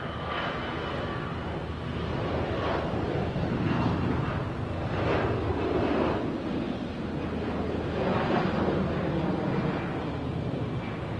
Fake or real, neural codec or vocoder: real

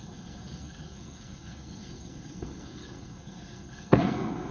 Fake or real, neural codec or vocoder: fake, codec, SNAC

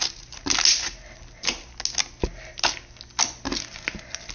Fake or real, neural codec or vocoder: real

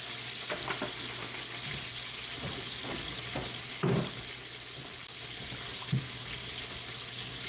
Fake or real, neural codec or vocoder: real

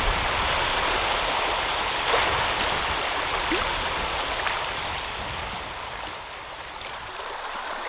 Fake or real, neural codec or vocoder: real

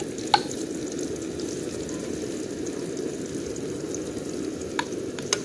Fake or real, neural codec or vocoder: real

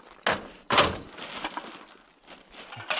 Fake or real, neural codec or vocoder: real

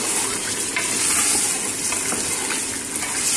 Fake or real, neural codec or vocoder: real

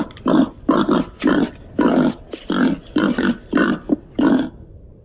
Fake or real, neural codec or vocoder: real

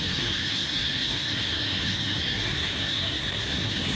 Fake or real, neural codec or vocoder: fake, codec, SNAC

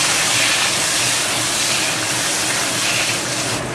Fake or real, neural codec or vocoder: real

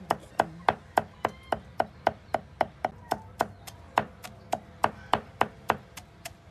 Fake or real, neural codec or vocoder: real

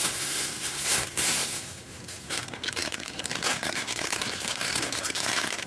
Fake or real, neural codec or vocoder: fake, codec, SNAC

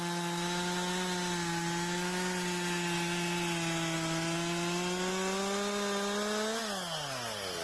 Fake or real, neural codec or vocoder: real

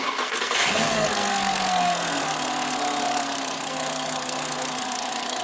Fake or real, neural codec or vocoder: fake, codec, SNAC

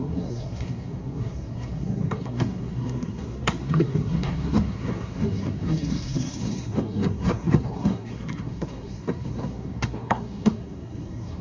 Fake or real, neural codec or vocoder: fake, codec, SNAC